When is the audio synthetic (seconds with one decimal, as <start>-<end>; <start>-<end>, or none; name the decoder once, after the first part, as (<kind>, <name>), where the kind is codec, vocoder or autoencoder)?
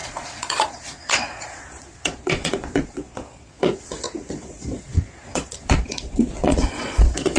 0.0-7.4 (vocoder, Vocos)